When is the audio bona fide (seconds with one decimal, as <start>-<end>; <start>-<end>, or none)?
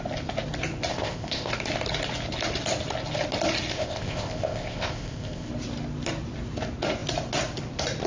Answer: 0.0-0.9; 1.5-3.7; 5.5-8.1